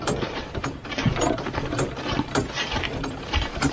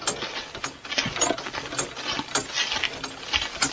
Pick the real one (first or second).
second